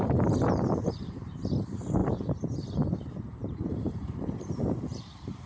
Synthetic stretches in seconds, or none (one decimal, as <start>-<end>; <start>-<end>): 0.0-5.5